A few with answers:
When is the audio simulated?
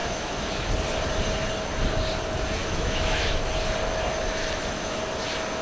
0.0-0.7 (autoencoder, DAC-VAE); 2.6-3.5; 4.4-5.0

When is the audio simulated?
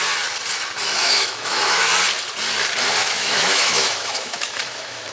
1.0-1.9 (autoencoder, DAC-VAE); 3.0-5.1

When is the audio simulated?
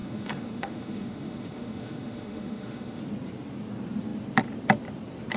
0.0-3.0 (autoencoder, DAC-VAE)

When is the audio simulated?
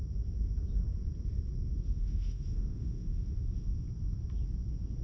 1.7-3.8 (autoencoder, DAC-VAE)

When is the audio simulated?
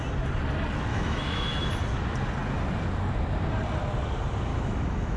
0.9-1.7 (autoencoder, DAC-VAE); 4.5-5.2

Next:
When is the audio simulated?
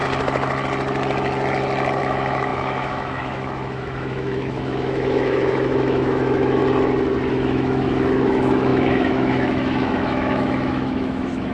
2.0-6.6 (autoencoder, DAC-VAE); 7.3-11.5